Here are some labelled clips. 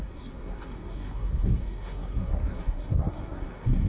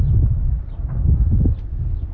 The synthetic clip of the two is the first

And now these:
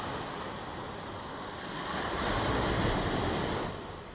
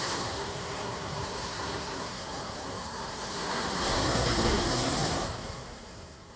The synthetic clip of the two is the second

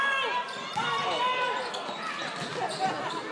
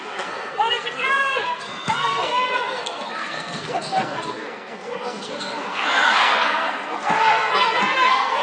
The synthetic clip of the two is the second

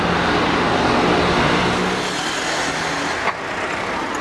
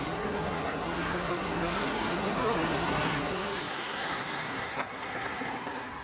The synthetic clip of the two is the second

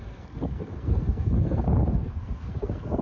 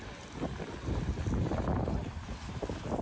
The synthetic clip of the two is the first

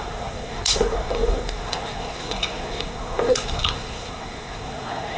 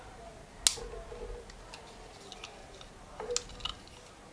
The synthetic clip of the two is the first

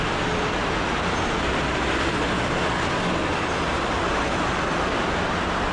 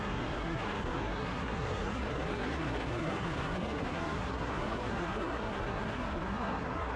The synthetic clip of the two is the second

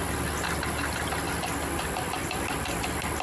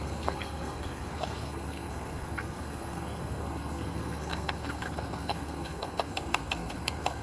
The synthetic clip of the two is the second